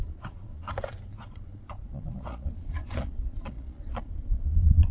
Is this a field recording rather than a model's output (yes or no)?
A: no